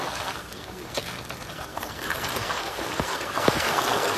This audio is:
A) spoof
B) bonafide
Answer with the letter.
A